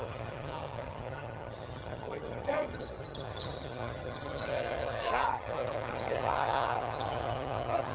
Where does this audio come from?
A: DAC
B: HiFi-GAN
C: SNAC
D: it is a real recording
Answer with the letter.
B